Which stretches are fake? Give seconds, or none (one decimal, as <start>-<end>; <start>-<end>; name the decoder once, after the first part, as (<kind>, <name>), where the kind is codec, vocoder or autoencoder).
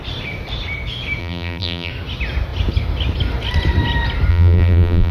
1.2-1.9 (vocoder, BigVGAN v2); 4.3-5.1